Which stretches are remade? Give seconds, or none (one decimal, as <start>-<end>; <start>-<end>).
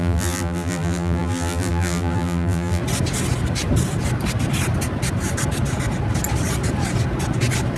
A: 0.0-2.8